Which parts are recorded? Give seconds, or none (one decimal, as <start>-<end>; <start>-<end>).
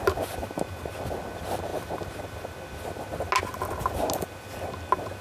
0.0-5.2